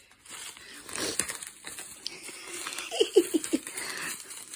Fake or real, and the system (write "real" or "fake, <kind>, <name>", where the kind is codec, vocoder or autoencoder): real